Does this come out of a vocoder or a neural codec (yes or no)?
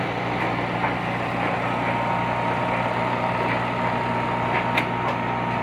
no